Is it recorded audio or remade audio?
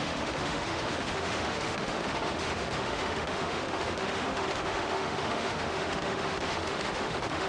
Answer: remade